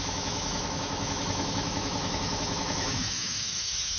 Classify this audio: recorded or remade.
remade